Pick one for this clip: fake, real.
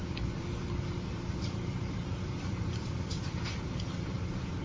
fake